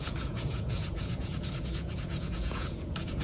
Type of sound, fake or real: fake